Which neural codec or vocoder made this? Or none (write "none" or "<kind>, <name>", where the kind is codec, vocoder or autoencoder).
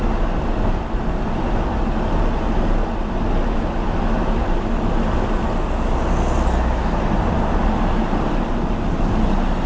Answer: none